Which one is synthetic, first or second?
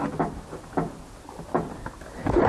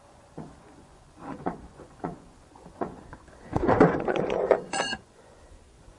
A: second